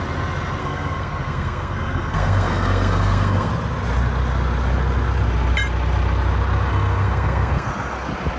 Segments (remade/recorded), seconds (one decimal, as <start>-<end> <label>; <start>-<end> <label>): 0.0-0.6 recorded; 0.6-3.5 remade; 3.5-6.7 recorded; 6.7-7.7 remade; 7.7-8.4 recorded